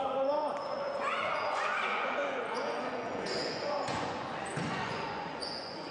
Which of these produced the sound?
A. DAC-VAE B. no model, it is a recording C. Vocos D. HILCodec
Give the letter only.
C